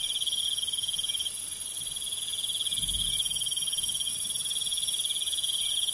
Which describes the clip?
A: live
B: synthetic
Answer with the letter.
A